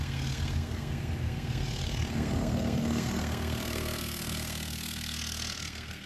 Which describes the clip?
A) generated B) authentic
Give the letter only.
A